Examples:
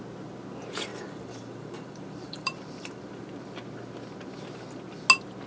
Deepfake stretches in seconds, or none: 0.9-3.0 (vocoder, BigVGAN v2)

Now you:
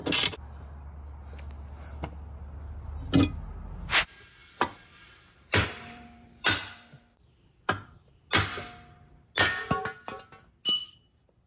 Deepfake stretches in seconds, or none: 4.4-8.1 (vocoder, BigVGAN v2)

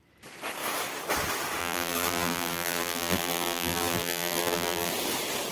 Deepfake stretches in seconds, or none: 1.6-4.9 (vocoder, BigVGAN v2)